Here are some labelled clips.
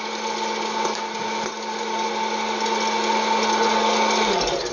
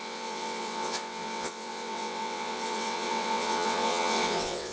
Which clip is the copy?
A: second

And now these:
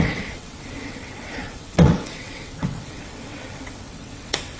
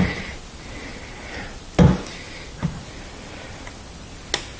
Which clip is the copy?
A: first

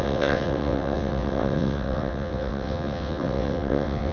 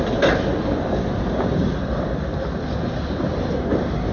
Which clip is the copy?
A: first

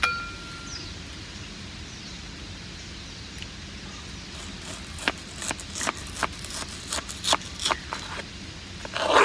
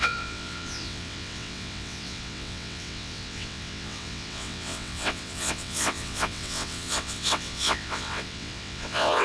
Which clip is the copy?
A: second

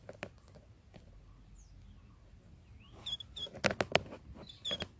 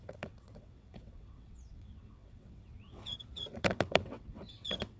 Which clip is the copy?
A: second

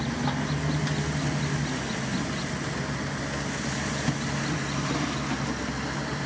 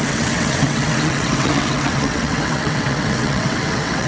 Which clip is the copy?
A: second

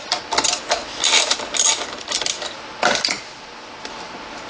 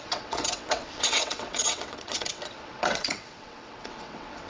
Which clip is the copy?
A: second